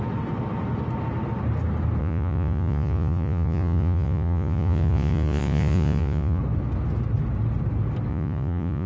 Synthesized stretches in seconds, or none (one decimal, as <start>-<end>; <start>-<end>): 2.0-6.4; 8.1-8.9